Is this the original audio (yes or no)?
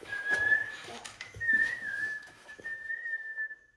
no